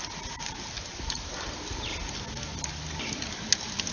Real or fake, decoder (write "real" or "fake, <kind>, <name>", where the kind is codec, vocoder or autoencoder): real